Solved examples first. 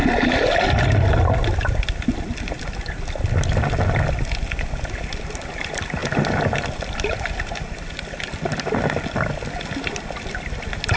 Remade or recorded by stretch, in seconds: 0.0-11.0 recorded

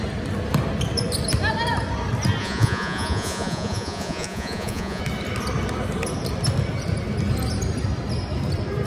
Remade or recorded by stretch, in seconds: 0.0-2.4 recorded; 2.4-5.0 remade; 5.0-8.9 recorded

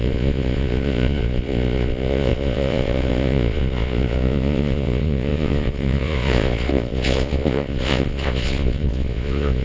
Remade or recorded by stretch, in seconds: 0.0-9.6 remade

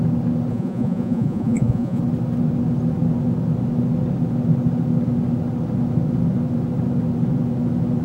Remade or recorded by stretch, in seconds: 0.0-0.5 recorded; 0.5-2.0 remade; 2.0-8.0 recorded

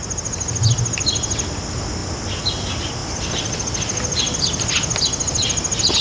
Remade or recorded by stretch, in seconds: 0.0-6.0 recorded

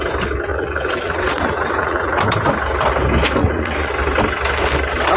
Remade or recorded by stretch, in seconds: 0.0-0.5 recorded; 0.5-2.2 remade; 2.2-3.4 recorded; 3.4-3.9 remade; 3.9-5.2 recorded

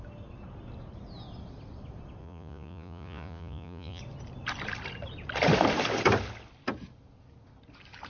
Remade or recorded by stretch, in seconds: 0.0-2.2 recorded; 2.2-4.0 remade; 4.0-8.1 recorded

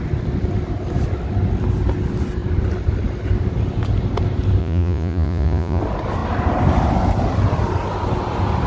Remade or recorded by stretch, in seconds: 0.0-4.6 recorded; 4.6-5.8 remade; 5.8-8.7 recorded